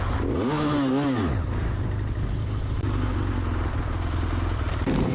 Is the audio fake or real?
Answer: real